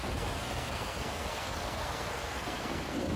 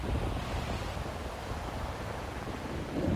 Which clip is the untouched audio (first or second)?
second